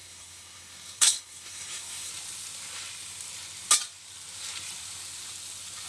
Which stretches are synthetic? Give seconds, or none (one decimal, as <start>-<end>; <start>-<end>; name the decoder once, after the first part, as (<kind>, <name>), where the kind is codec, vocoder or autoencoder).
0.0-2.1 (codec, SNAC)